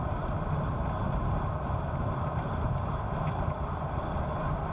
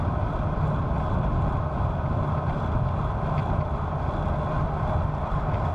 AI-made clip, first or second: first